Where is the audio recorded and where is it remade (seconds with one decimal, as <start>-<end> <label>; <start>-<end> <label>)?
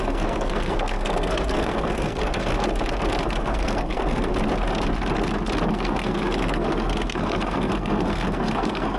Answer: 0.0-2.5 remade; 2.5-3.2 recorded; 3.2-4.3 remade; 4.3-5.7 recorded; 5.7-9.0 remade